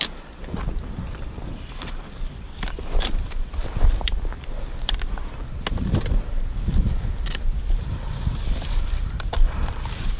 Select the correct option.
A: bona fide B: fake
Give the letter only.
B